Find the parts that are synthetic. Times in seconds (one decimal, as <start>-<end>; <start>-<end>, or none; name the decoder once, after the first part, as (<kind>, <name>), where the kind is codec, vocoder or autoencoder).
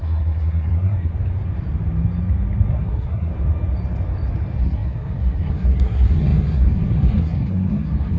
0.0-1.1 (codec, SNAC); 2.7-3.3; 4.6-8.2